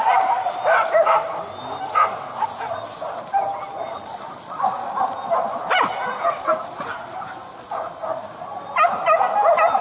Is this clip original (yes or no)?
yes